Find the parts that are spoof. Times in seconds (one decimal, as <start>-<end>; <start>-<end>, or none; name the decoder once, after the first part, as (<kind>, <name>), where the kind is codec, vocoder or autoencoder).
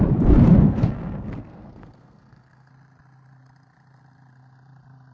0.6-2.7 (codec, SNAC)